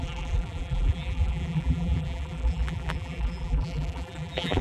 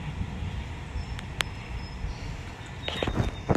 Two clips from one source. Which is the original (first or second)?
second